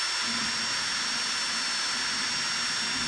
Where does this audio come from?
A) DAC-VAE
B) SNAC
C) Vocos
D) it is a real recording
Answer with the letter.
D